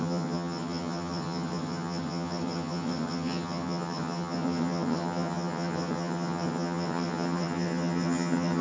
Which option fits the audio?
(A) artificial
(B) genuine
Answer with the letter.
A